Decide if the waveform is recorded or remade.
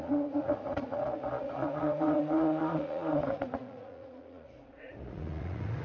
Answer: remade